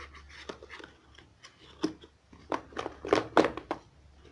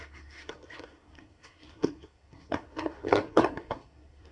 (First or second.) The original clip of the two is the first